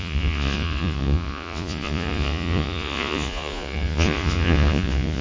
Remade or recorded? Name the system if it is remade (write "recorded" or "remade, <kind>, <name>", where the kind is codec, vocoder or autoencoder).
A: remade, vocoder, Vocos